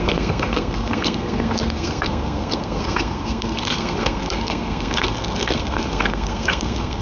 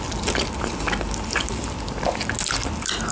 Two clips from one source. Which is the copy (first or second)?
first